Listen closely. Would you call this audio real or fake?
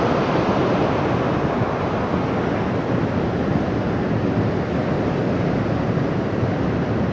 real